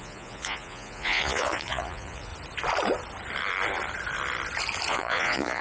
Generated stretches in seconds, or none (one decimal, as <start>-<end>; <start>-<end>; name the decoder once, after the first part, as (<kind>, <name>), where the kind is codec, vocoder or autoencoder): 0.0-2.3 (vocoder, Vocos); 4.9-5.6